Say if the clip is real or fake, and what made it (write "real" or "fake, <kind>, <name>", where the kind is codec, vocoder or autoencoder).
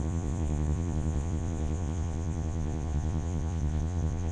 fake, vocoder, Vocos